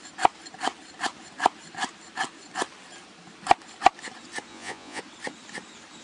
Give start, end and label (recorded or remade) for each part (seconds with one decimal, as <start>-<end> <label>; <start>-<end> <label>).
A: 0.0-4.5 recorded; 4.5-5.0 remade; 5.0-6.0 recorded